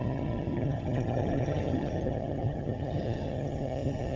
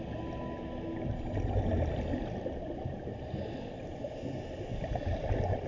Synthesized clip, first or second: first